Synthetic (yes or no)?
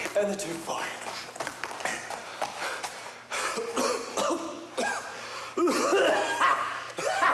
no